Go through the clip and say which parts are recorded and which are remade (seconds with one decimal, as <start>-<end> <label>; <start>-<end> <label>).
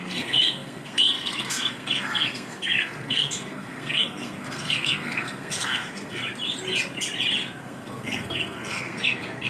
0.0-6.2 remade; 6.2-7.6 recorded; 7.6-9.5 remade